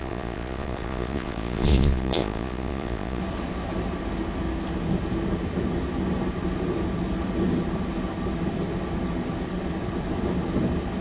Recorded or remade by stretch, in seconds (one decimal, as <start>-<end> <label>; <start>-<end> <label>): 0.0-3.2 remade; 3.2-11.0 recorded